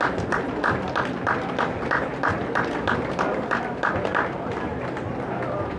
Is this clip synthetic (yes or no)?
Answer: no